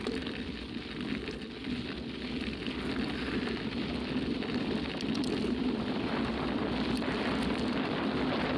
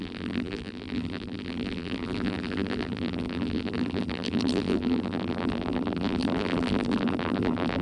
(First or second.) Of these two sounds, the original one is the first